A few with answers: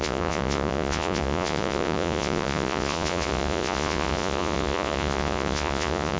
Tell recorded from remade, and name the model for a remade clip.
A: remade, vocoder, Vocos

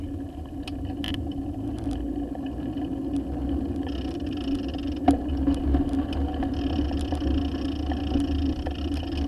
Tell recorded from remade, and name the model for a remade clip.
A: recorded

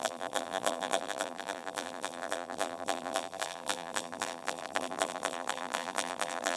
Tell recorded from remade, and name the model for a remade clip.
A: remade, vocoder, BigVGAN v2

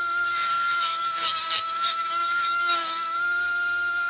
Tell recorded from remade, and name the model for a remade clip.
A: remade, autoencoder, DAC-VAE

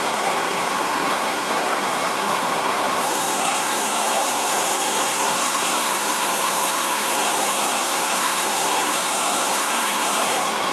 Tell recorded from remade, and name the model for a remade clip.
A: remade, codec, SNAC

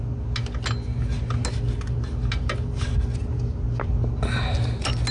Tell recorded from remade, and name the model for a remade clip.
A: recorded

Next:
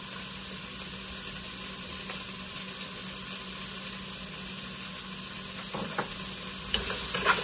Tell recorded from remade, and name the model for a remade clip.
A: recorded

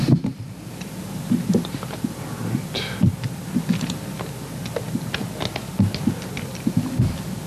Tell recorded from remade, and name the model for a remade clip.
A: recorded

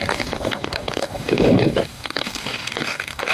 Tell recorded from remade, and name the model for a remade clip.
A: remade, codec, DAC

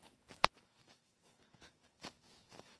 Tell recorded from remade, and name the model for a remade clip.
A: remade, autoencoder, DAC-VAE